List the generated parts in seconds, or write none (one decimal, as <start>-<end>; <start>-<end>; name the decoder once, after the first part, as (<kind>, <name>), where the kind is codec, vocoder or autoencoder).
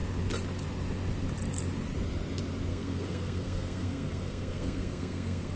2.7-5.6 (codec, SNAC)